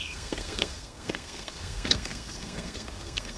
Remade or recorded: remade